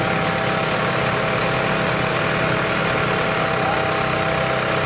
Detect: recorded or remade recorded